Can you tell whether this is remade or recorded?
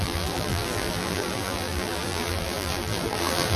remade